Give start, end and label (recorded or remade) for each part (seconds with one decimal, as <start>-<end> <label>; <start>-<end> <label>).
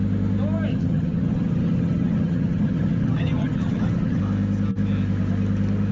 0.0-0.7 recorded; 0.7-4.2 remade; 4.2-5.9 recorded